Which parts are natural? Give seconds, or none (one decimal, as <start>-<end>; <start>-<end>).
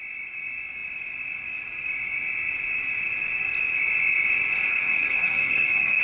0.0-4.7